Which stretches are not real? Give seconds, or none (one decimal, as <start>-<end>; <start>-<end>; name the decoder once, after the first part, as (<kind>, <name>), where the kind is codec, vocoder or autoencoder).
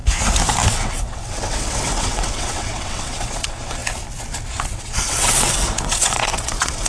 0.7-3.8 (vocoder, WaveNeXt); 4.5-6.9